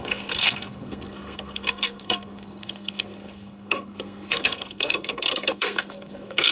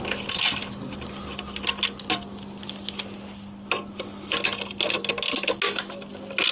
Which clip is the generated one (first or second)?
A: first